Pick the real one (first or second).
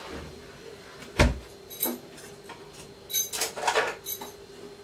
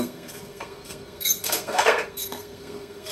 first